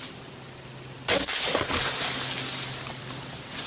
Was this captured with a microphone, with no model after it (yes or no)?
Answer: yes